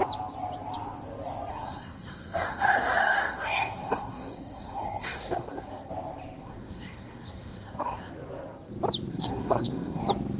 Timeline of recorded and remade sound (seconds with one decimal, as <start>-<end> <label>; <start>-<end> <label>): 0.0-1.5 recorded; 1.5-5.9 remade; 5.9-6.4 recorded; 6.4-8.1 remade; 8.1-9.1 recorded; 9.1-10.0 remade; 10.0-10.4 recorded